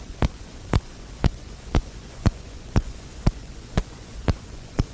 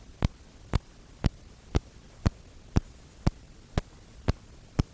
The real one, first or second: second